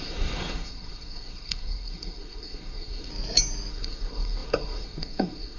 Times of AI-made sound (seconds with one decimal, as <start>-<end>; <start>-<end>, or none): 0.0-3.1; 3.7-5.6